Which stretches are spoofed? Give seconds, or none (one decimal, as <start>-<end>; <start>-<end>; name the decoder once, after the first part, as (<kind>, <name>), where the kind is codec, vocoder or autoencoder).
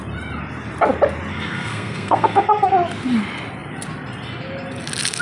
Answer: 1.3-2.7 (codec, SNAC)